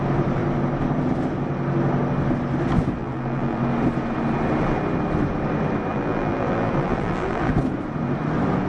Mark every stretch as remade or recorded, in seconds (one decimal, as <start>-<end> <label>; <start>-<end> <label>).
0.0-3.0 recorded; 3.0-3.6 remade; 3.6-5.9 recorded; 5.9-7.5 remade; 7.5-8.7 recorded